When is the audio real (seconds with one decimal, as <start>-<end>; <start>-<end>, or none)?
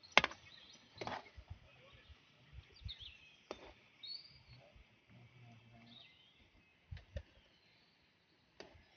0.0-9.0